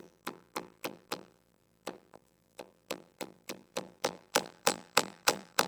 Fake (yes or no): yes